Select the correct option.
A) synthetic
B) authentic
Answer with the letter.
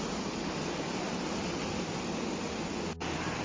B